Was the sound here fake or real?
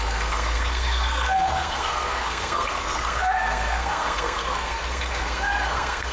fake